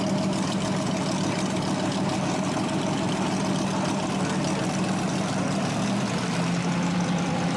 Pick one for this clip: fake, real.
real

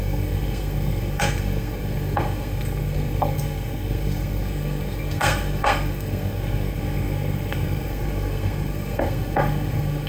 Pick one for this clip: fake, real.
fake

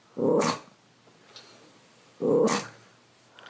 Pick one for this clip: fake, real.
real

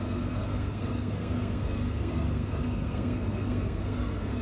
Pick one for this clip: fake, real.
fake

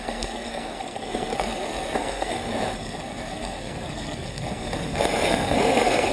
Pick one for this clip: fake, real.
fake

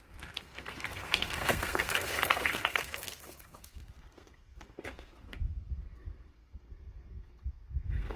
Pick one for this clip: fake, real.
fake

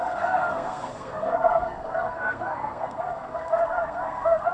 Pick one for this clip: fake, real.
fake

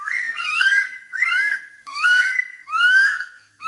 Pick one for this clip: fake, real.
fake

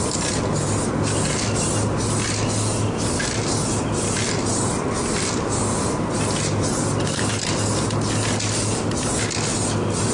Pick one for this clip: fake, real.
real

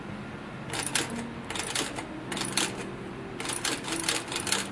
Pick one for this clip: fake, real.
real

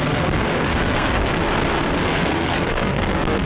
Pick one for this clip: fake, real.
fake